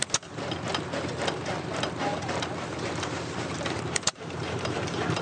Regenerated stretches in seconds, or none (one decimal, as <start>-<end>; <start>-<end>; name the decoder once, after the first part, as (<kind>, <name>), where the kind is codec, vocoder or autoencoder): 2.1-5.2 (vocoder, BigVGAN v2)